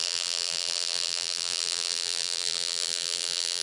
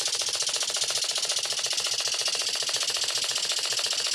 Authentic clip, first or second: second